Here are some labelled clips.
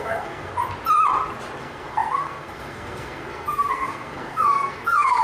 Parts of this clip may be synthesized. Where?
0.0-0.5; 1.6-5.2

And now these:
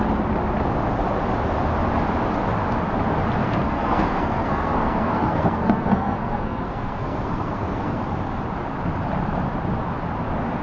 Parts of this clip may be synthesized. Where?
3.4-8.0

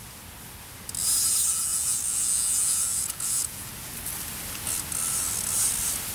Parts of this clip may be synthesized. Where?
1.7-3.7

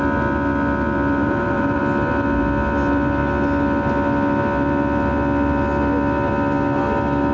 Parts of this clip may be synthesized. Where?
1.2-1.8

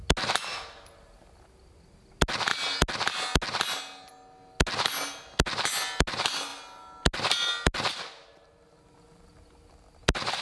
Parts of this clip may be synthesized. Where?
none

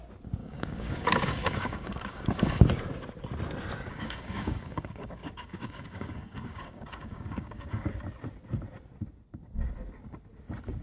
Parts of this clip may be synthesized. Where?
0.4-2.6; 3.9-7.9

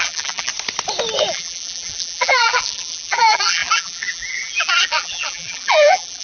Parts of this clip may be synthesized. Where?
0.0-0.5; 1.3-6.2